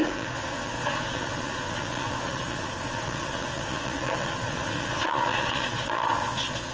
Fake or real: fake